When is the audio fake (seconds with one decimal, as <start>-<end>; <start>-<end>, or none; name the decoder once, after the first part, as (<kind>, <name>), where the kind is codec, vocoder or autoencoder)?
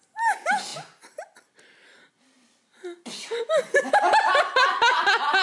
none